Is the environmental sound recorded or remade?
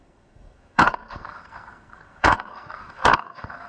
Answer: remade